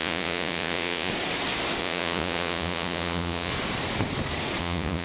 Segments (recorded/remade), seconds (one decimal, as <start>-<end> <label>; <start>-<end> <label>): 0.0-1.1 remade; 1.1-1.8 recorded; 1.8-3.5 remade; 3.5-4.6 recorded; 4.6-5.0 remade

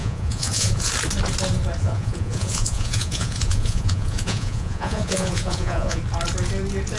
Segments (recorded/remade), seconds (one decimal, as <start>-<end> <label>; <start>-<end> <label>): 0.0-0.9 remade; 0.9-1.8 recorded; 1.8-6.0 remade; 6.0-7.0 recorded

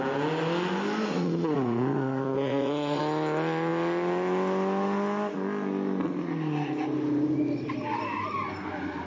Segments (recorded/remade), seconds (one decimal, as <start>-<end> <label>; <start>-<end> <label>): 0.0-1.1 recorded; 1.1-3.0 remade; 3.0-9.1 recorded